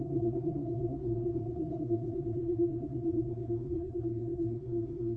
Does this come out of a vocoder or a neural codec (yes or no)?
yes